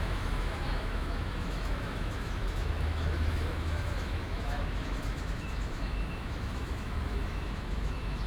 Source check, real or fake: fake